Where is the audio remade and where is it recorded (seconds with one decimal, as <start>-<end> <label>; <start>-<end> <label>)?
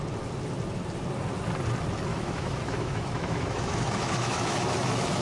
0.0-2.1 recorded; 2.1-5.2 remade